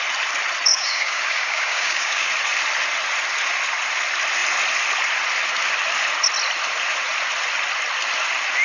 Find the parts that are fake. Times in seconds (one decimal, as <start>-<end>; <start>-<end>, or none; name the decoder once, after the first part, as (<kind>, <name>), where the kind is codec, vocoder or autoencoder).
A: 0.7-2.3 (codec, DAC)

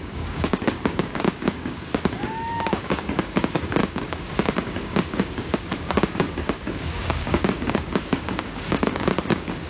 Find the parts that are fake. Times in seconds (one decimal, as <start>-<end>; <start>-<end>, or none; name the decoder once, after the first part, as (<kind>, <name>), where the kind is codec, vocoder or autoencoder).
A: 0.0-9.7 (codec, DAC)

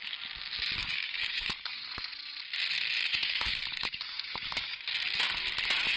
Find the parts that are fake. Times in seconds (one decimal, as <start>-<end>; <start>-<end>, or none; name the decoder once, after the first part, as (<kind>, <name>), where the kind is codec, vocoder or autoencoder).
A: 0.8-1.9 (codec, DAC); 3.1-4.8

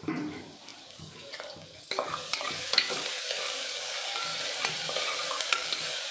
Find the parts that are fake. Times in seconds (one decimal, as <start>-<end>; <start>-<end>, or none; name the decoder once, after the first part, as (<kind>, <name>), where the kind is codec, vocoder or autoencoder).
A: 0.0-4.3 (codec, DAC); 5.3-6.1

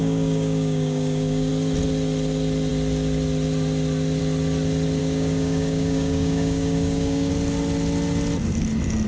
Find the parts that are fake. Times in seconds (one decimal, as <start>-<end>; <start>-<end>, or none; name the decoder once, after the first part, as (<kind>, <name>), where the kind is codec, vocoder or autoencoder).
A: 0.0-1.5 (codec, DAC); 5.0-7.3

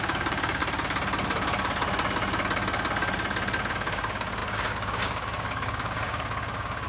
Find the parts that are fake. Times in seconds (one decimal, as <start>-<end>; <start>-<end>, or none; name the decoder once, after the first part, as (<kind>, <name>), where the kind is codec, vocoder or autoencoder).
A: 0.0-0.6 (codec, DAC); 3.7-6.9

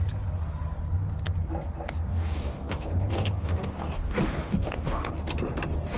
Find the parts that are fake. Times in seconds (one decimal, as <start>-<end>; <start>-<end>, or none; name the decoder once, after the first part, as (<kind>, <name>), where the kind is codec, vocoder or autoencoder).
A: 2.1-5.1 (codec, DAC)